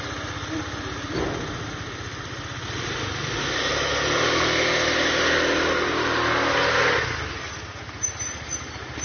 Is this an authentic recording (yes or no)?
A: yes